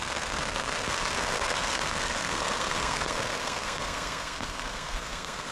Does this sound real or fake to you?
fake